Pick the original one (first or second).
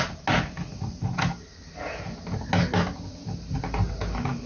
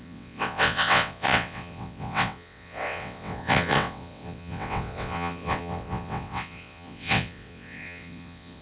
first